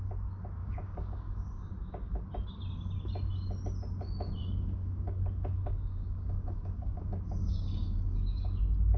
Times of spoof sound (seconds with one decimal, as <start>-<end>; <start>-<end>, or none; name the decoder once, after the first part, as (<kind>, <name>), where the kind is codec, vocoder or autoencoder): 0.6-1.7 (codec, DAC); 4.4-8.6